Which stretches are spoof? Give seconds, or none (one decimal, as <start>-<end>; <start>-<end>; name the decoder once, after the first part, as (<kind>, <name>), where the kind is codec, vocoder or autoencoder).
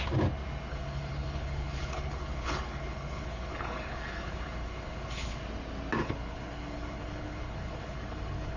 0.7-5.4 (codec, HILCodec); 6.0-8.6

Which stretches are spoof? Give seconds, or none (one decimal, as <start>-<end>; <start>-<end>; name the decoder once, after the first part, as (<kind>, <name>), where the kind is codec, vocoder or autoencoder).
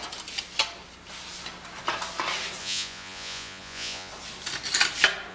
2.6-4.1 (vocoder, Vocos)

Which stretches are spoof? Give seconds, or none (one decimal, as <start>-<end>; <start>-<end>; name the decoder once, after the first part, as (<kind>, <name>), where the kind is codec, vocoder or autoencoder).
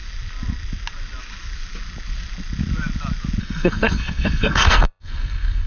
3.4-5.7 (codec, SNAC)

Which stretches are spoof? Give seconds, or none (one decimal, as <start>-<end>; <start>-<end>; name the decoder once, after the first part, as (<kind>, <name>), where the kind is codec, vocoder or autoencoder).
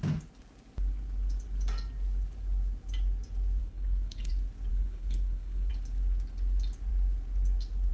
3.6-4.3 (codec, HILCodec); 4.7-5.7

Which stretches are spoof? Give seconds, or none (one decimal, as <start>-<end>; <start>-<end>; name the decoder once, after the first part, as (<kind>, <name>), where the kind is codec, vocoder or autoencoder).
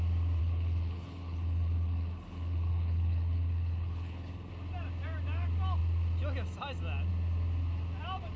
0.4-4.5 (codec, HILCodec)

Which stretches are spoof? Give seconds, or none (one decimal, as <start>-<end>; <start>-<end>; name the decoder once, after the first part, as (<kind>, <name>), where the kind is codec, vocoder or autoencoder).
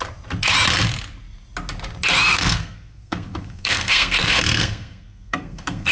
2.3-5.9 (codec, SNAC)